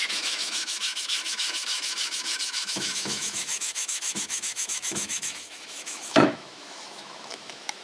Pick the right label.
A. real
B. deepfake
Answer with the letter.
B